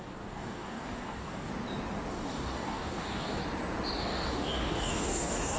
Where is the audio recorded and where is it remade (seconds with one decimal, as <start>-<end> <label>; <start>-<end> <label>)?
0.0-1.5 remade; 1.5-2.1 recorded; 2.1-3.4 remade; 3.4-4.0 recorded; 4.0-5.6 remade